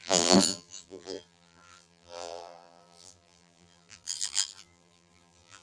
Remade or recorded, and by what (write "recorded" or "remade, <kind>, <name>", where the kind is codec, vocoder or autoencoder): remade, vocoder, BigVGAN v2